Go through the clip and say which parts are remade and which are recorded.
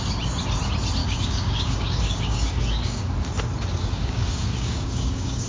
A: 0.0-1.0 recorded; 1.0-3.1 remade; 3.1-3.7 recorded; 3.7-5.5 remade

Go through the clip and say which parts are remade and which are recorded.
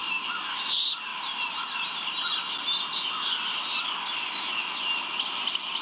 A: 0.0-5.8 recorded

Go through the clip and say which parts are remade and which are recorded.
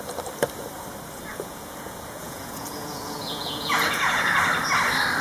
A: 0.0-1.3 recorded; 1.3-4.4 remade; 4.4-5.2 recorded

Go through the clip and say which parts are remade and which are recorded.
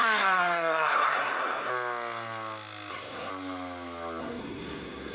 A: 0.0-1.7 remade; 1.7-2.9 recorded; 2.9-3.3 remade; 3.3-4.2 recorded; 4.2-5.1 remade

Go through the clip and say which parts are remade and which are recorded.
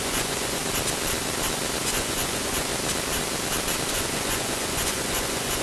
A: 0.0-0.6 remade; 0.6-1.8 recorded; 1.8-2.7 remade; 2.7-3.9 recorded; 3.9-5.6 remade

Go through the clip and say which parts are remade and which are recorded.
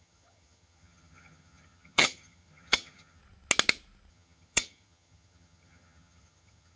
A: 0.0-3.2 remade; 3.2-4.1 recorded; 4.1-6.8 remade